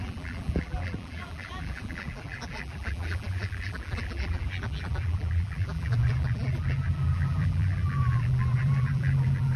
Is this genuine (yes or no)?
no